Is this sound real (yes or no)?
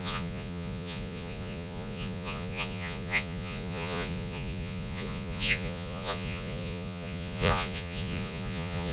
no